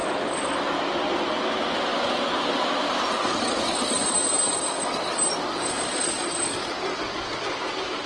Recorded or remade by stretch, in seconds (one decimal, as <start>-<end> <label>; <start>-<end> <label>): 0.0-8.1 recorded